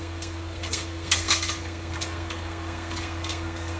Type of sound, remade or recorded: remade